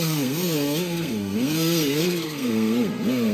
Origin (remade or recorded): remade